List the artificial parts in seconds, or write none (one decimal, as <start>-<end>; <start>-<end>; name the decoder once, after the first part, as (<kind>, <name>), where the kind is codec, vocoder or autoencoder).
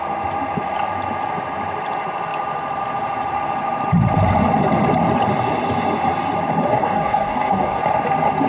6.7-7.8 (codec, DAC)